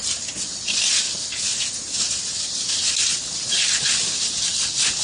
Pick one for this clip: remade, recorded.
recorded